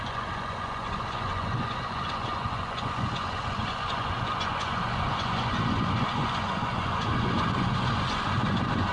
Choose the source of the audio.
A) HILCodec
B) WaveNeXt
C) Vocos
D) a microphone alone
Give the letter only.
C